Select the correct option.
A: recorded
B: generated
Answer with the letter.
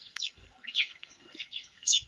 B